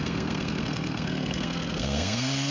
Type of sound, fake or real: fake